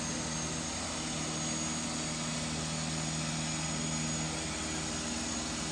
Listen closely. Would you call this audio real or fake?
real